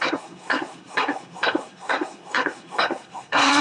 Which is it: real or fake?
fake